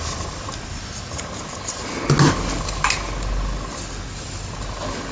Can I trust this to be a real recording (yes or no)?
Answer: yes